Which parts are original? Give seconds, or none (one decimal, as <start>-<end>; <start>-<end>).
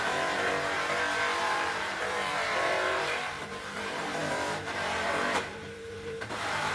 0.5-1.4